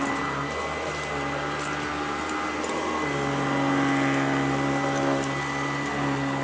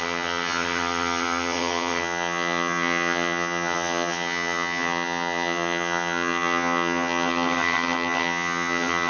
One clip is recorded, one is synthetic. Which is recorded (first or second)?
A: first